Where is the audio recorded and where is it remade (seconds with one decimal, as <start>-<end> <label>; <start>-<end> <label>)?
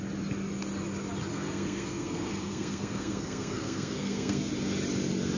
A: 0.0-1.3 recorded; 1.3-4.5 remade; 4.5-5.4 recorded